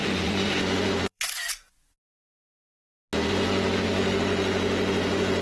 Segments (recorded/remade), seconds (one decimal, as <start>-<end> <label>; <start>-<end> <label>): 0.0-2.4 remade; 2.4-3.3 recorded; 3.3-5.4 remade